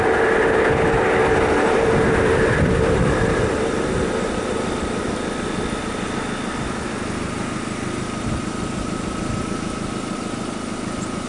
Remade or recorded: recorded